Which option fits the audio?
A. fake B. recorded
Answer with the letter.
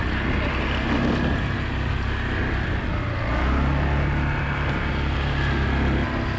B